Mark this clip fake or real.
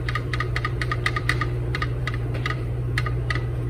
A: fake